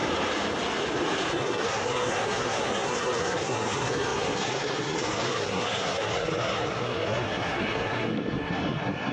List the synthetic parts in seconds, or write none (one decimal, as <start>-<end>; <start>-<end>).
1.3-9.1